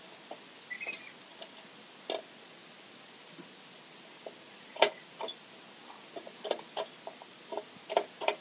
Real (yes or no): yes